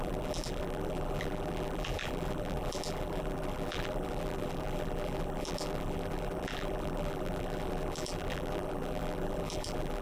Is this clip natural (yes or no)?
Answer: no